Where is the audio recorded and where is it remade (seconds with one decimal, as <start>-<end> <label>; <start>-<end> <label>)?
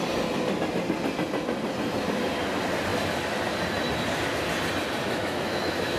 0.0-5.0 recorded; 5.0-6.0 remade